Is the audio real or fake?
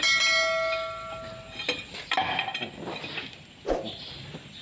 real